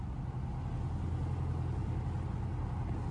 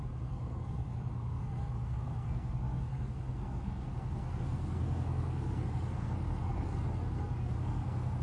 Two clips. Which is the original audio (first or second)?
first